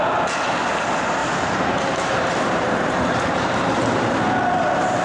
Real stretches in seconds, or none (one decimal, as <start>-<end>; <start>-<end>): 0.0-1.2; 4.2-5.0